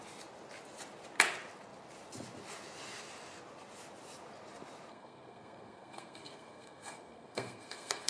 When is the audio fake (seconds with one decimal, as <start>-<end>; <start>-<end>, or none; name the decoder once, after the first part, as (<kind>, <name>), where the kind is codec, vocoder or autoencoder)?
4.9-8.1 (codec, SNAC)